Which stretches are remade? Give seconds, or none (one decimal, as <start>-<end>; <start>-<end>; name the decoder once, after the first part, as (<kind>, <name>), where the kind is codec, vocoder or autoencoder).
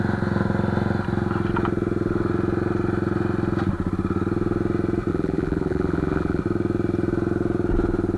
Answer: 5.1-6.4 (vocoder, BigVGAN v2)